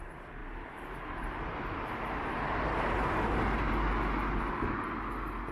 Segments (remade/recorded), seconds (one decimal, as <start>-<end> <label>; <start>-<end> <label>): 0.0-0.4 recorded; 0.4-3.7 remade; 3.7-5.5 recorded